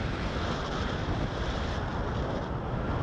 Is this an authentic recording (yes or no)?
yes